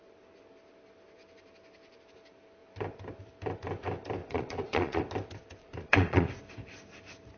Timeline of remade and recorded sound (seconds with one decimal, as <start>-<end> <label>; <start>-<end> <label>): 0.0-4.2 recorded; 4.2-5.0 remade; 5.0-5.6 recorded; 5.6-6.3 remade; 6.3-7.4 recorded